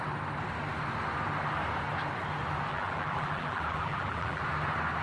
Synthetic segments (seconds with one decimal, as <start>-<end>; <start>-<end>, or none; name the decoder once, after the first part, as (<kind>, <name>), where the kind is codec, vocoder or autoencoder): 2.7-4.4 (vocoder, BigVGAN v2)

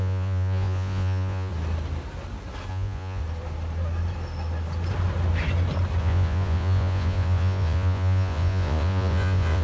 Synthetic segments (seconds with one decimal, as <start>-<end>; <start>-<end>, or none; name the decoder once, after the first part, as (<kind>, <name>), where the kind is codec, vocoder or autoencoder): 0.0-1.5 (vocoder, Vocos); 2.7-3.2; 6.0-9.6

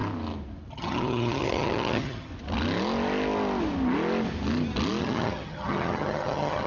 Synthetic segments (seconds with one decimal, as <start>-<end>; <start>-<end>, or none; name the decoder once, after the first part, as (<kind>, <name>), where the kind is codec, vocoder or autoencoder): 0.7-2.3 (vocoder, HiFi-GAN); 5.0-6.7

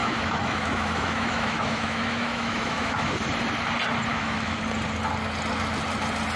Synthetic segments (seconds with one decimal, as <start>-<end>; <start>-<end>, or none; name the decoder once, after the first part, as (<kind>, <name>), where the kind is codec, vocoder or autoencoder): 0.0-3.1 (autoencoder, DAC-VAE); 4.1-4.6

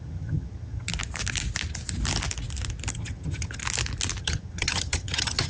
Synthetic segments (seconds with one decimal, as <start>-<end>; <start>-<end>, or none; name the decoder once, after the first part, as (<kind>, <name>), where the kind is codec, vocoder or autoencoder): 0.0-0.9 (vocoder, HiFi-GAN); 2.9-3.6; 4.2-5.5

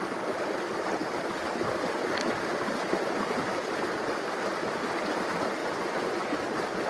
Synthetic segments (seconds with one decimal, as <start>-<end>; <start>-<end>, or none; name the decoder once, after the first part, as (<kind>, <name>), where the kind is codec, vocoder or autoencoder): 5.6-6.4 (vocoder, Vocos)

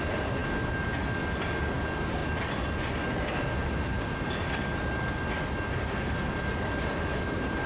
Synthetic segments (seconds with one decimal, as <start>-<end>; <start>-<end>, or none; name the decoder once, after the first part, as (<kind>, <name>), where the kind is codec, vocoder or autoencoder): none

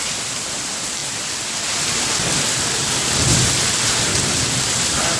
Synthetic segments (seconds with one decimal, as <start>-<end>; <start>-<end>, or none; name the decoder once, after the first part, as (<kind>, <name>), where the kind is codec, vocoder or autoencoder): none